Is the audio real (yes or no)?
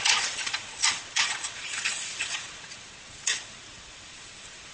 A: no